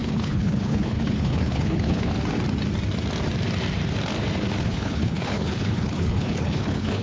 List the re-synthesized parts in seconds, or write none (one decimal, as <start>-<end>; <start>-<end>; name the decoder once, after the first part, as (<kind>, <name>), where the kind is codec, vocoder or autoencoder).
0.0-2.1 (codec, HILCodec); 4.6-7.0